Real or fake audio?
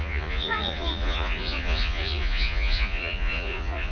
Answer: fake